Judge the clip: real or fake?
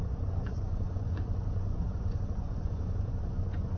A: fake